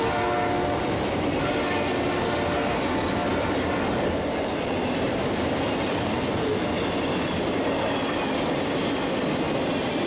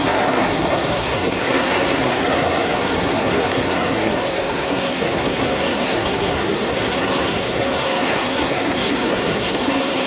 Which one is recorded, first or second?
first